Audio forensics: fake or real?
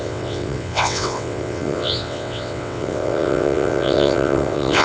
fake